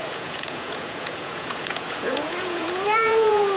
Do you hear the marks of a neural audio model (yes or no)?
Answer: yes